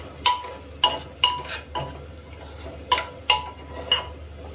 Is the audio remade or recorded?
recorded